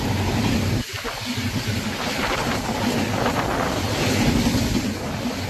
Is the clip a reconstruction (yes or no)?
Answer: no